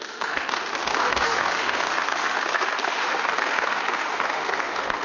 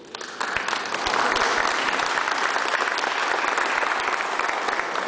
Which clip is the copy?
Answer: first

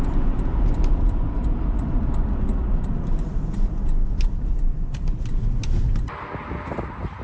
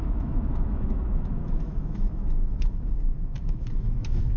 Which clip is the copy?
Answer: second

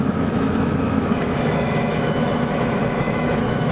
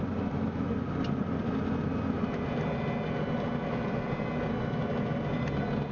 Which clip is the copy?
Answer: first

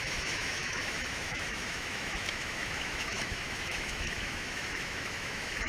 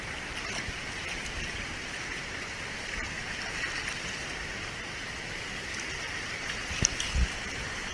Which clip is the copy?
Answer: first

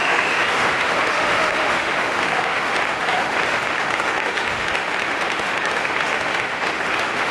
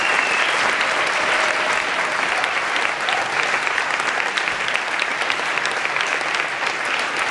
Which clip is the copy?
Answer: first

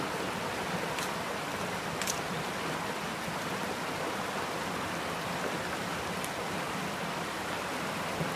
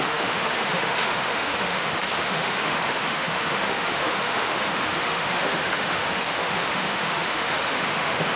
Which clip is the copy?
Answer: second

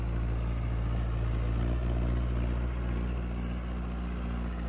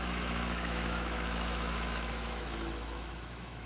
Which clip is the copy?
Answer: second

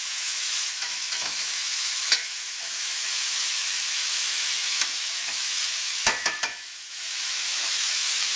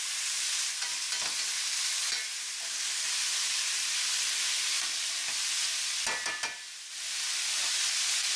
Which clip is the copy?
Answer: first